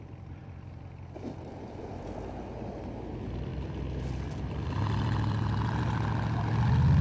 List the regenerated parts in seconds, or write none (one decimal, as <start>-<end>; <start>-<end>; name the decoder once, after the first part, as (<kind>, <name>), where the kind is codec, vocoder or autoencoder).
none